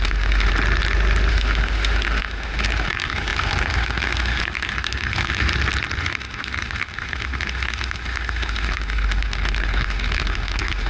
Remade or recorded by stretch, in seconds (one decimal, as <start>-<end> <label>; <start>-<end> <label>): 0.0-0.5 remade; 0.5-1.3 recorded; 1.3-5.5 remade; 5.5-6.0 recorded; 6.0-10.9 remade